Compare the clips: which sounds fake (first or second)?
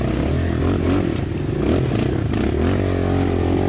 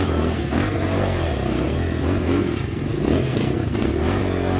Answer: second